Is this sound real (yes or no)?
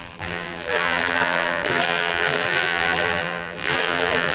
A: no